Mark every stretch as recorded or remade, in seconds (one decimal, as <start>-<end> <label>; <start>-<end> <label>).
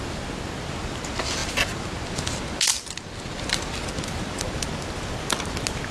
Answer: 0.0-5.9 recorded